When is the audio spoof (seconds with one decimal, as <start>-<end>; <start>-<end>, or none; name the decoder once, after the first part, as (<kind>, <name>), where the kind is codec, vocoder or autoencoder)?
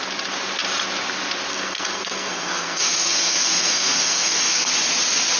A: 1.5-4.7 (codec, SNAC)